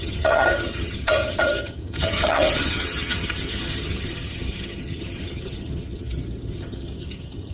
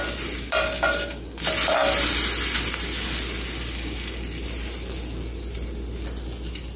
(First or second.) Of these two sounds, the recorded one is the second